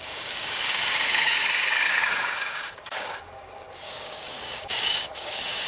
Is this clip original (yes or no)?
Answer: no